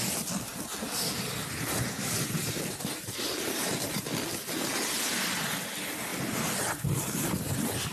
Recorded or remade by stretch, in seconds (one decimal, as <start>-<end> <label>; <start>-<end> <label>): 0.0-7.9 recorded